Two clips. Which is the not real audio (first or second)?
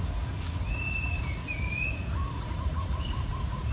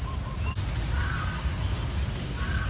first